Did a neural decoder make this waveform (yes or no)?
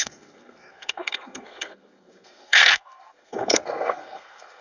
yes